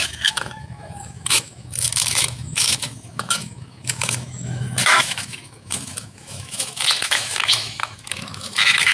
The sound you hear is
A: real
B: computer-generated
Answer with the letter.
B